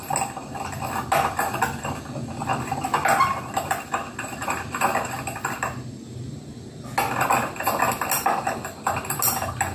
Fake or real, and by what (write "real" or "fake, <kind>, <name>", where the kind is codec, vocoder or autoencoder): real